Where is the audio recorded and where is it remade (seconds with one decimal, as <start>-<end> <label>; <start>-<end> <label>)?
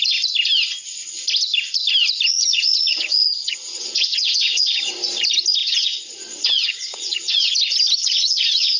0.0-2.3 recorded; 2.3-4.9 remade; 4.9-5.6 recorded; 5.6-7.5 remade; 7.5-8.0 recorded; 8.0-8.8 remade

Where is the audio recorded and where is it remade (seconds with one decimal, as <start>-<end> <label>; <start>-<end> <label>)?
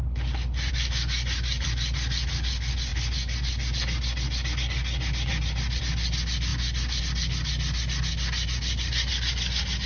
0.0-9.9 recorded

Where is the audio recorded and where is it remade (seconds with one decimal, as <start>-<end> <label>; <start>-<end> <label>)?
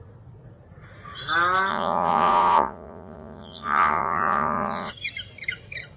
0.0-1.7 recorded; 1.7-4.9 remade; 4.9-6.0 recorded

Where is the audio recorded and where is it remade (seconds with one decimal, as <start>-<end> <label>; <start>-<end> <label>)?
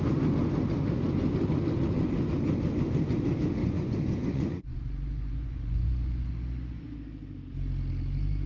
0.0-3.6 recorded; 3.6-6.3 remade; 6.3-8.5 recorded